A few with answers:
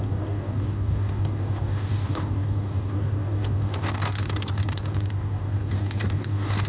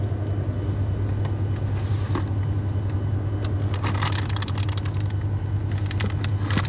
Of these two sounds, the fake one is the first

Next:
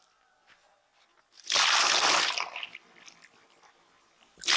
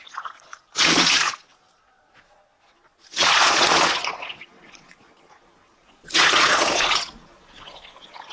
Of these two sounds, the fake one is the second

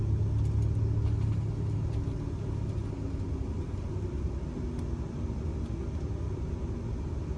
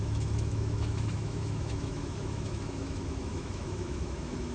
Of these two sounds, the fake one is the second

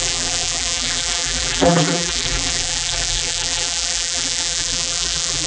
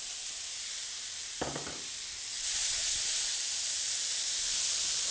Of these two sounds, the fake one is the first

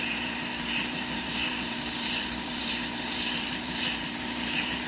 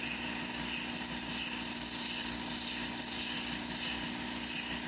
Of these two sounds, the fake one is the first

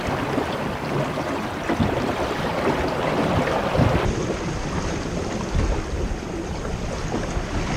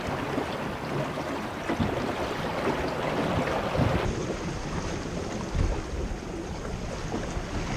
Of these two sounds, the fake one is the first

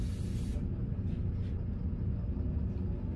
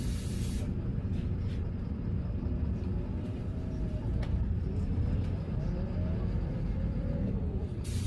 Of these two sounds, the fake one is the second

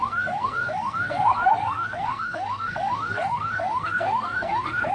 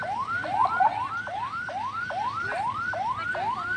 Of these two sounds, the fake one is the first